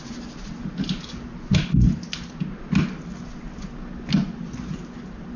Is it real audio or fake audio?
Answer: real